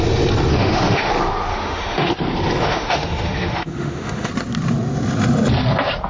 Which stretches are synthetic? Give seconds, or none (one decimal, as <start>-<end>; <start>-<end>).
0.5-1.1; 1.5-2.1; 2.6-4.3